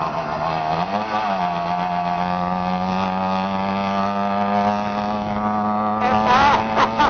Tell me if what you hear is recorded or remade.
recorded